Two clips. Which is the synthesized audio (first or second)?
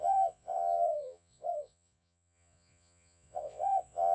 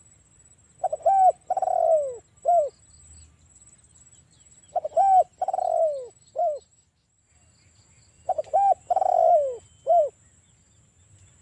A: first